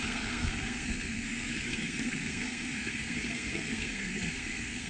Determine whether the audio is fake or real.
fake